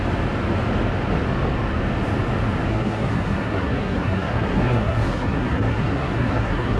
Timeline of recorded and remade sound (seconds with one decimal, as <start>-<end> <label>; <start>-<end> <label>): 0.0-2.7 recorded; 2.7-6.8 remade